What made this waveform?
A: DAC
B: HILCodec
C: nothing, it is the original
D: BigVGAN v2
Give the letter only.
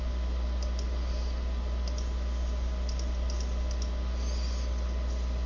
C